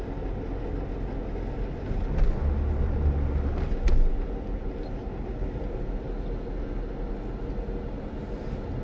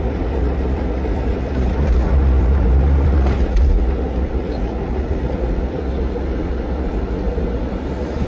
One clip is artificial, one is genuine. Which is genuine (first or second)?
first